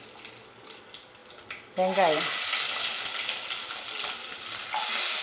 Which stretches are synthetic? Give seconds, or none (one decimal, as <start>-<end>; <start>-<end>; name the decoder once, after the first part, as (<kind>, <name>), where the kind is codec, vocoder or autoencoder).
none